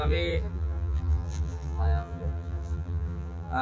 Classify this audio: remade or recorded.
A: remade